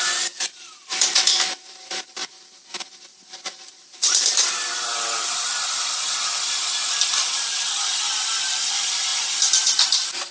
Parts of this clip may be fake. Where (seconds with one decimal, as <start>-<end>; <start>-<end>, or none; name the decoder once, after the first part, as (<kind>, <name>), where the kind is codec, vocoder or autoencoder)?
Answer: 0.0-10.3 (vocoder, BigVGAN v2)

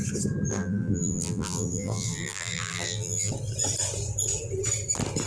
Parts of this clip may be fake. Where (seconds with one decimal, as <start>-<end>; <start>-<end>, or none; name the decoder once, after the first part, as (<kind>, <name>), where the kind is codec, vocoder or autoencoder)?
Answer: 0.5-3.3 (vocoder, BigVGAN v2)